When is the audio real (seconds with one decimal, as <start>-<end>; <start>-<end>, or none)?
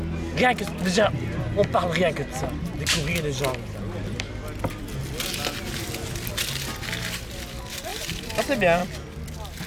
0.0-8.8